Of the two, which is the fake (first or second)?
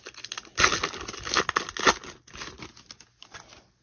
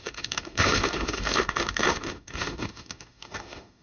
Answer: second